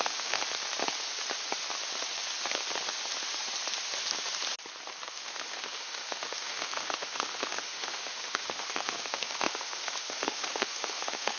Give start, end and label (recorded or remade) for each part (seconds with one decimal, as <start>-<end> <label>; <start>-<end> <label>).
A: 0.0-0.4 remade; 0.4-5.1 recorded; 5.1-11.4 remade